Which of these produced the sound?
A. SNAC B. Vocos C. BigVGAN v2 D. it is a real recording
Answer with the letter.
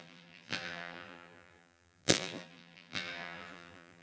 C